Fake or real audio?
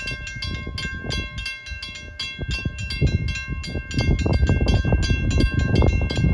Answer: real